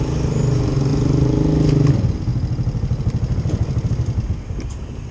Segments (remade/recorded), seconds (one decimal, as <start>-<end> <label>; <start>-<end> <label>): 0.0-2.3 recorded; 2.3-3.9 remade; 3.9-5.1 recorded